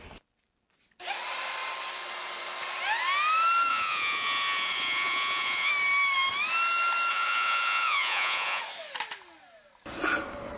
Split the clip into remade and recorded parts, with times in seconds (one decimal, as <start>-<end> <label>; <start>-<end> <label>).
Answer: 0.0-3.7 recorded; 3.7-5.7 remade; 5.7-7.1 recorded; 7.1-8.6 remade; 8.6-10.6 recorded